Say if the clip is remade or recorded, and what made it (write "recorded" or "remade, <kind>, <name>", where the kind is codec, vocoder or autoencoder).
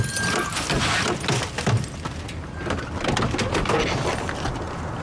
recorded